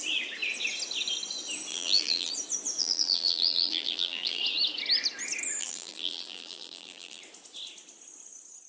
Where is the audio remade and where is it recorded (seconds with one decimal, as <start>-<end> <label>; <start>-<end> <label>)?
0.0-1.7 recorded; 1.7-2.3 remade; 2.3-2.8 recorded; 2.8-4.4 remade; 4.4-5.6 recorded; 5.6-7.2 remade; 7.2-8.7 recorded